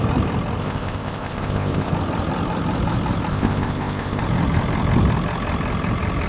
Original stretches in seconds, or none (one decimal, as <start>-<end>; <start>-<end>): 0.0-0.6; 1.9-3.3; 4.2-6.3